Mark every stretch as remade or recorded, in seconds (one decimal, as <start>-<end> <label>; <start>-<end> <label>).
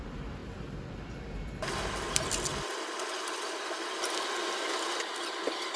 0.0-5.8 recorded